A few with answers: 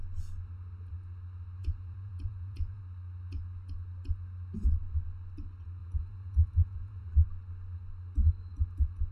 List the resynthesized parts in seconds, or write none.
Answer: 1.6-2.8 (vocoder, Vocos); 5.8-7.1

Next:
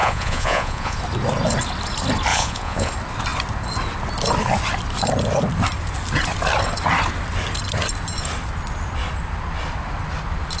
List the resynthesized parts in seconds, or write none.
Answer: 0.0-1.0 (vocoder, Vocos); 2.3-2.9